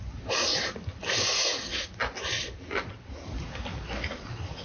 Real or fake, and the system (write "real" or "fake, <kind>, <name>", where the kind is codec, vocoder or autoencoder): real